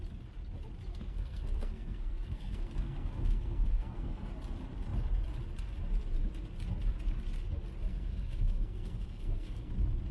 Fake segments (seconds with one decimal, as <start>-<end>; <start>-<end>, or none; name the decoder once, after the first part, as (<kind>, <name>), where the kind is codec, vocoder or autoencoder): 0.9-4.3 (codec, SNAC); 7.9-9.7